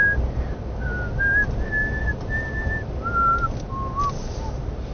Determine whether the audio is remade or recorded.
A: recorded